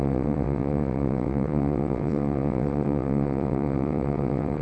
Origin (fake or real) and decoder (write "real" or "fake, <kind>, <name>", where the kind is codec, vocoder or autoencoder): fake, vocoder, WaveNeXt